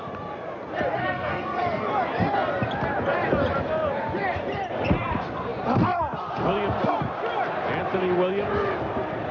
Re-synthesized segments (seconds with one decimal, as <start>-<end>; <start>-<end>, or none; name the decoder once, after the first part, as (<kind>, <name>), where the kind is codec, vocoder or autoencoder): 1.0-1.9 (codec, SNAC)